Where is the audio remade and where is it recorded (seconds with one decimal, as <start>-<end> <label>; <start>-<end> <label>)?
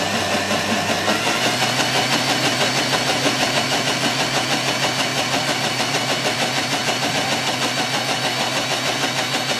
0.0-5.1 recorded; 5.1-7.1 remade; 7.1-9.6 recorded